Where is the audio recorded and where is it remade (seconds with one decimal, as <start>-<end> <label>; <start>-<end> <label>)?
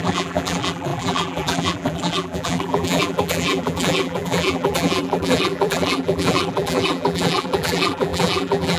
0.0-8.8 remade